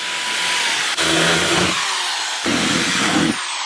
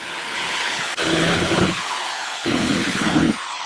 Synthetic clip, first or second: second